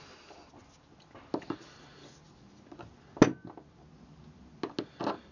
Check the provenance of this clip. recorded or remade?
recorded